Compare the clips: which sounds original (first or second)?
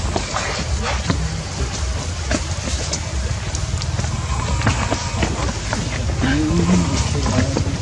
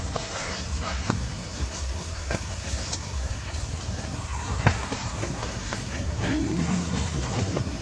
first